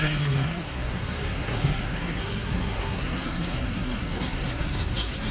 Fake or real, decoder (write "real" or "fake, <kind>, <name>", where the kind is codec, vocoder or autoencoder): fake, codec, SNAC